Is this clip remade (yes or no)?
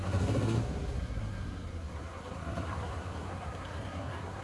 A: yes